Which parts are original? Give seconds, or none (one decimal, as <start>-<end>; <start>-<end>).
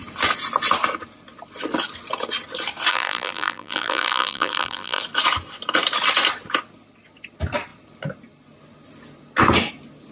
0.0-2.9; 5.0-10.1